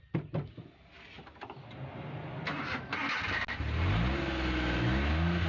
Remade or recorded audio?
recorded